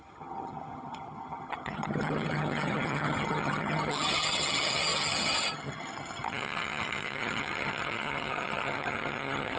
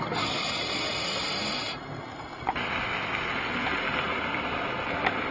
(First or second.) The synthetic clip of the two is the first